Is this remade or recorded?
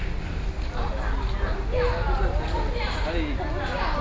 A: recorded